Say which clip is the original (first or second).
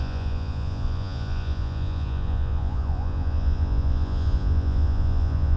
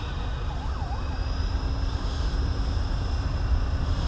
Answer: second